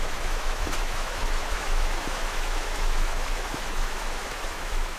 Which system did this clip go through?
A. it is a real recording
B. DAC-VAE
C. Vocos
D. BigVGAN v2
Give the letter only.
B